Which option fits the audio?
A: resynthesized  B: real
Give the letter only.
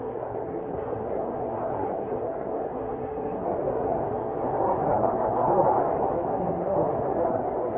A